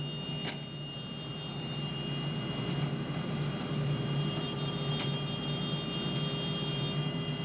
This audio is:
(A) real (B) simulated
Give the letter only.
A